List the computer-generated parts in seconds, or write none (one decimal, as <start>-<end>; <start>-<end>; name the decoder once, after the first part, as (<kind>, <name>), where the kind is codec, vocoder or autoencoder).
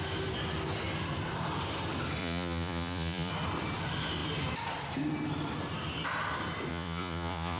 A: 2.2-3.3 (vocoder, Vocos); 6.7-7.6